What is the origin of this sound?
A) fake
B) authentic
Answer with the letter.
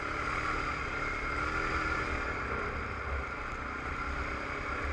B